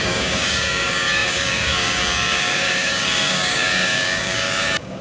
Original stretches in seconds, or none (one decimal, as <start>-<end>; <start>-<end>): none